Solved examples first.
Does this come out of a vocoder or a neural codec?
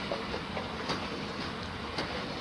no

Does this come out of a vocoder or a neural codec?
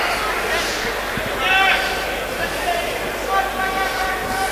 no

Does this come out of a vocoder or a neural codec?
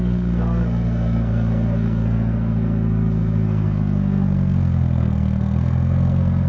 yes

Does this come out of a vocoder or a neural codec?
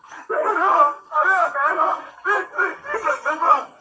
yes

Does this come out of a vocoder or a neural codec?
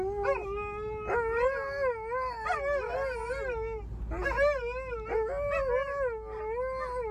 no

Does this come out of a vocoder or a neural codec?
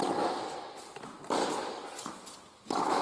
no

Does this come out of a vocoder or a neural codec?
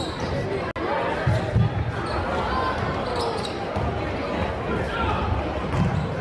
no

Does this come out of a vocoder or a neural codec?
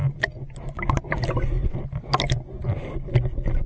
no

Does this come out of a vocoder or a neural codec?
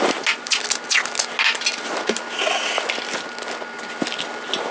no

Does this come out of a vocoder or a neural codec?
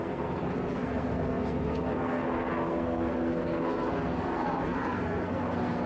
yes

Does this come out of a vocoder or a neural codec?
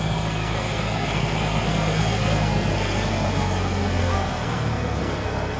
yes